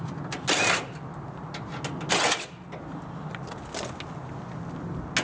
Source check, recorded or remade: recorded